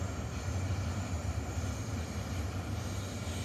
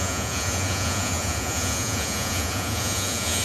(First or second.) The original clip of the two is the first